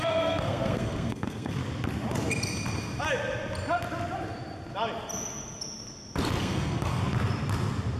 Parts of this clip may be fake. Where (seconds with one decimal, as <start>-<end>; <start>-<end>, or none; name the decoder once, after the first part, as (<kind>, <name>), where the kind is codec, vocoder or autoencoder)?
0.0-1.6 (codec, SNAC); 6.4-7.0